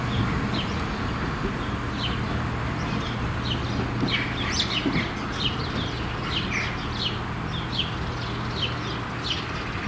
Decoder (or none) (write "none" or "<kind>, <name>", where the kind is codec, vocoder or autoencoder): none